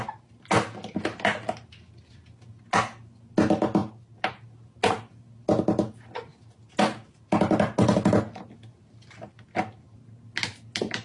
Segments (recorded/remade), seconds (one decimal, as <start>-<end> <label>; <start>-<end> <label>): 0.0-11.0 recorded